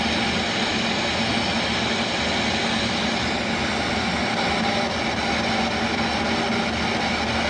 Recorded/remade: recorded